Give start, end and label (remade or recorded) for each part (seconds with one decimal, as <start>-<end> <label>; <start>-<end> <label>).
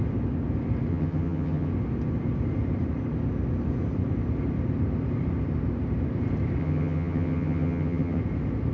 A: 0.0-0.9 recorded; 0.9-1.7 remade; 1.7-6.6 recorded; 6.6-8.2 remade; 8.2-8.7 recorded